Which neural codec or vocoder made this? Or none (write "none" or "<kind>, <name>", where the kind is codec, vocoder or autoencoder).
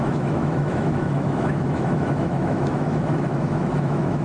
autoencoder, DAC-VAE